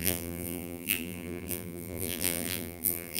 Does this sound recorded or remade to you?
remade